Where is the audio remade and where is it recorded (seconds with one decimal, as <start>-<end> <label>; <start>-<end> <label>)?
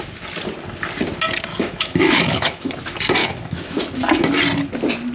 0.0-1.5 recorded; 1.5-2.8 remade; 2.8-3.2 recorded; 3.2-3.8 remade; 3.8-5.1 recorded